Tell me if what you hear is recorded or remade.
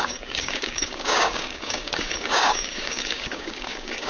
remade